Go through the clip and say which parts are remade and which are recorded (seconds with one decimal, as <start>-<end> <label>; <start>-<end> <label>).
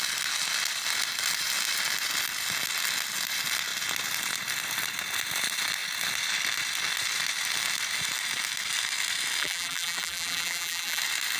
0.0-9.4 recorded; 9.4-11.0 remade; 11.0-11.4 recorded